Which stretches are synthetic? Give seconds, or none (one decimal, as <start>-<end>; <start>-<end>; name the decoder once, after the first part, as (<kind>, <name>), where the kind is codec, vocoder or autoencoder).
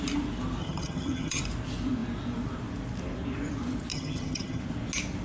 0.6-1.4 (vocoder, HiFi-GAN); 3.9-4.6